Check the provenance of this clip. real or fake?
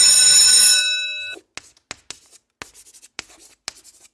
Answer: real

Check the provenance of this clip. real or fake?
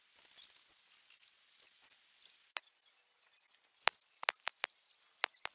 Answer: real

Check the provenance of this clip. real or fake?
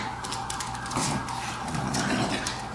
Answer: real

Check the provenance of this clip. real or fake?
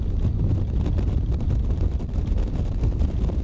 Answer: real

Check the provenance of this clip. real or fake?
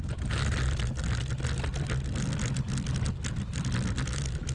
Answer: real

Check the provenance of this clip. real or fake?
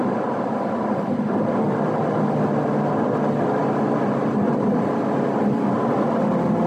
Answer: real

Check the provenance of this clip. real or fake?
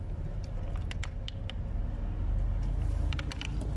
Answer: real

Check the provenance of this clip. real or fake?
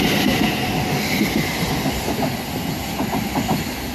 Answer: real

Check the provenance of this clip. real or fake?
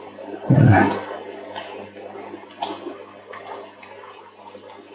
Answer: real